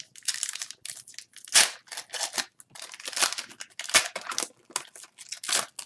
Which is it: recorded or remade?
recorded